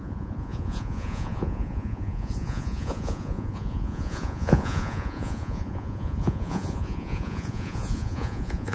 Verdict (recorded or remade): remade